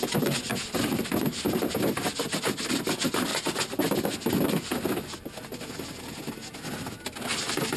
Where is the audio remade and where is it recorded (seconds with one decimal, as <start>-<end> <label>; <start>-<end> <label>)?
0.0-7.8 recorded